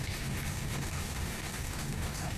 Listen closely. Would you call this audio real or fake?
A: fake